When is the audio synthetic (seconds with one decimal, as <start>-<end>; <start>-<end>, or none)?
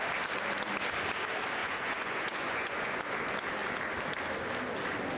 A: 1.6-3.0